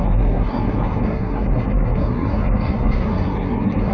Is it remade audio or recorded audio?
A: remade